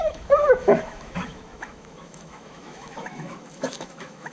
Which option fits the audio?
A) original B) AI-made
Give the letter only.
B